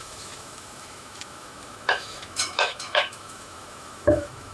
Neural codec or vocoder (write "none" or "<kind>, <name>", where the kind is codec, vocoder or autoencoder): autoencoder, DAC-VAE